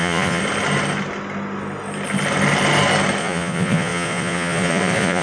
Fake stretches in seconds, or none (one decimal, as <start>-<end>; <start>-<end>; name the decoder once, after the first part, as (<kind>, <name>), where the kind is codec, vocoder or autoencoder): 0.0-0.4 (vocoder, Vocos); 3.2-5.2